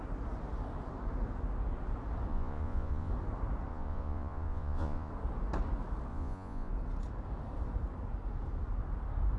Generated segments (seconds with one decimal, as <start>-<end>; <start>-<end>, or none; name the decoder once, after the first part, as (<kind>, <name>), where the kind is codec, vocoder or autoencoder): 2.3-3.1 (vocoder, Vocos); 3.7-5.1; 6.1-6.7

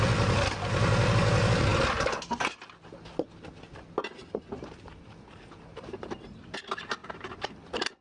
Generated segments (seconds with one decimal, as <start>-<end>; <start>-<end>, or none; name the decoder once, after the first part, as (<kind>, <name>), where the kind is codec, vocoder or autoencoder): 5.7-6.4 (vocoder, BigVGAN v2); 7.0-7.5

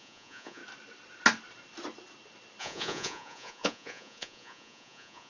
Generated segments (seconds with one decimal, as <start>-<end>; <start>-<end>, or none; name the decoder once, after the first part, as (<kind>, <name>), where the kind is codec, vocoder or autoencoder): 0.0-0.6 (vocoder, Vocos); 2.6-5.3

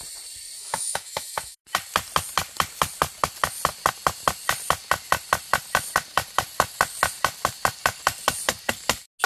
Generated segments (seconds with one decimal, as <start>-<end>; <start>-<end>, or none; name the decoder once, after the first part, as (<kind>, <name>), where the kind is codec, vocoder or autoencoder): 0.6-1.6 (autoencoder, DAC-VAE)